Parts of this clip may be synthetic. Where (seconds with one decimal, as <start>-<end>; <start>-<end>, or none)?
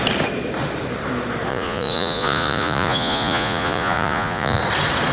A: 1.5-4.6